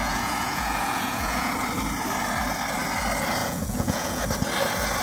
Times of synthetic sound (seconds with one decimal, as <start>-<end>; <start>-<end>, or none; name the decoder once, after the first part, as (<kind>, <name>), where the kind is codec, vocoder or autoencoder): 0.0-1.5 (vocoder, Vocos); 3.4-4.2